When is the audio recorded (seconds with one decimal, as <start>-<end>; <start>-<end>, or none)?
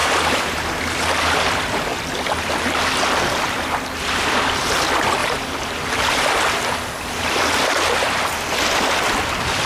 0.8-9.7